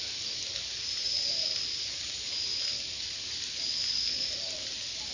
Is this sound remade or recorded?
recorded